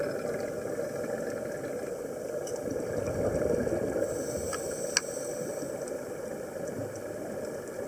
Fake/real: real